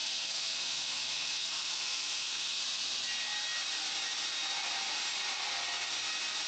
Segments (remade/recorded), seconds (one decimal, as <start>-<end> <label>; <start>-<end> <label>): 0.0-2.6 remade; 2.6-6.5 recorded